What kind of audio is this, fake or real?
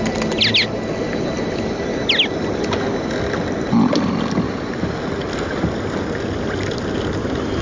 real